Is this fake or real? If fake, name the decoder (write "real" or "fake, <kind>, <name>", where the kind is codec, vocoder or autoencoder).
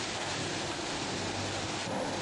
real